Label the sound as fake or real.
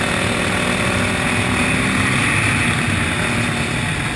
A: real